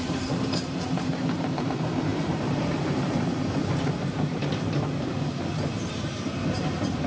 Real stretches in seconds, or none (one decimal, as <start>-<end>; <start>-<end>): none

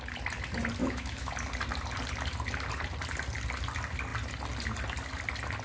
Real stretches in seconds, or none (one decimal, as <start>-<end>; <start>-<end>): 0.0-0.8; 1.3-5.6